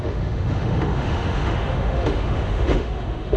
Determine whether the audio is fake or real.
fake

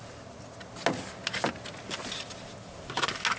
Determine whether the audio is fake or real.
real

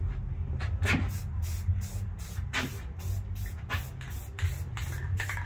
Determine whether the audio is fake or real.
real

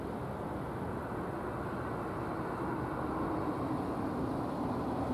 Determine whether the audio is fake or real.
real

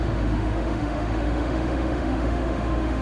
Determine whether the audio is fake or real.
fake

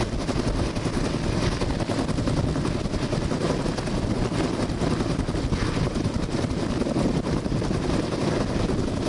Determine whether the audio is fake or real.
real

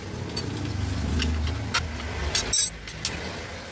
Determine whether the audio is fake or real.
real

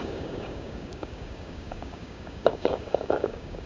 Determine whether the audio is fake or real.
fake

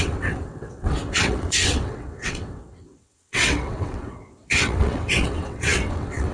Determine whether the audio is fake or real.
fake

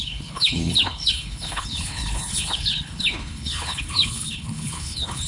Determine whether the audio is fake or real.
fake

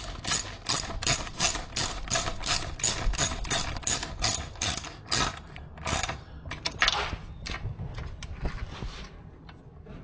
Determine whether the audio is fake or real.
real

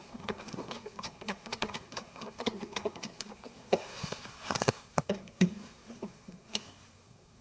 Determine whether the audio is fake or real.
fake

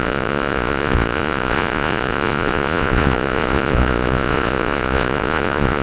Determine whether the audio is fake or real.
fake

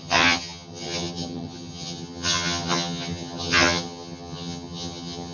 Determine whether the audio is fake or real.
fake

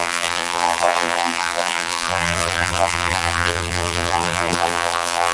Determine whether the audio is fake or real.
fake